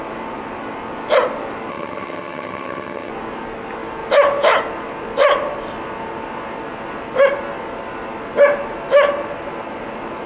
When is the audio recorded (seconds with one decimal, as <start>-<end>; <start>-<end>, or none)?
0.0-1.7; 3.1-10.3